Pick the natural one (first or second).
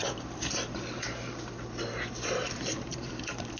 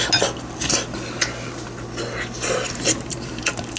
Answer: second